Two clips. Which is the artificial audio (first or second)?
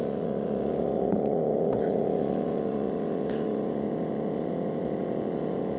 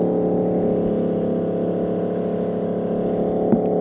first